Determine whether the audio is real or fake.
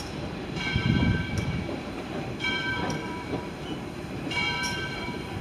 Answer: fake